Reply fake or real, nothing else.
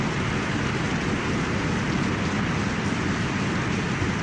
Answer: real